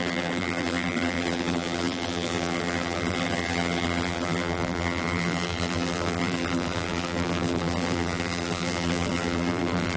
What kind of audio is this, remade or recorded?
remade